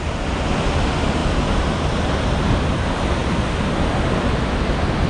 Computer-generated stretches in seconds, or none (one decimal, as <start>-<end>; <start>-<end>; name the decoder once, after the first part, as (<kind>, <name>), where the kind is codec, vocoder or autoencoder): none